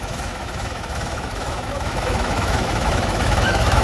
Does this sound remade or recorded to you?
remade